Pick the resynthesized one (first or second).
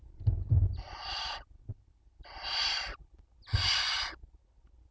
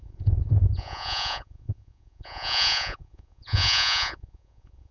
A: second